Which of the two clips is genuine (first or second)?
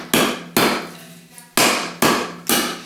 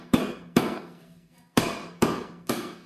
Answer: first